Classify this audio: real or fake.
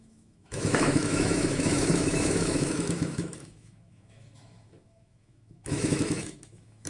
fake